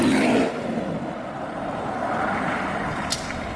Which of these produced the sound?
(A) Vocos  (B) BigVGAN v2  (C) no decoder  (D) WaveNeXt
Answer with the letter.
B